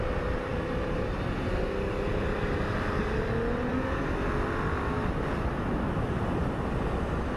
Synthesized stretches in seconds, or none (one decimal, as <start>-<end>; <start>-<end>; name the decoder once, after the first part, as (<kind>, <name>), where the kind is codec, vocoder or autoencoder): none